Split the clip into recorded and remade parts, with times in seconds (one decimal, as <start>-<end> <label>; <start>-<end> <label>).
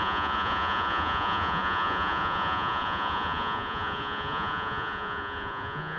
0.0-6.0 remade